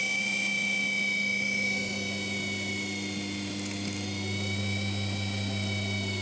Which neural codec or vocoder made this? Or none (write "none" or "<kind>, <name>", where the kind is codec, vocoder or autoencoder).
none